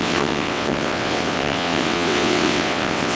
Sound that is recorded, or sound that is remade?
remade